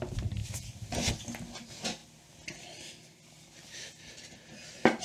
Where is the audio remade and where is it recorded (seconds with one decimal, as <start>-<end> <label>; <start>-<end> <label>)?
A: 0.0-5.0 recorded